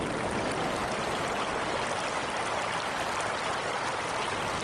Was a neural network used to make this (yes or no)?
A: no